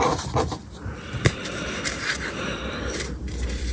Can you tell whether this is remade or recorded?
remade